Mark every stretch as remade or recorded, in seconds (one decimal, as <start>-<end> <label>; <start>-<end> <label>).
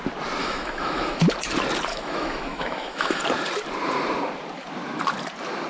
0.0-0.4 recorded; 0.4-1.2 remade; 1.2-1.9 recorded; 1.9-3.2 remade; 3.2-5.7 recorded